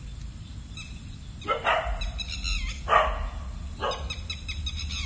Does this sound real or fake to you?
real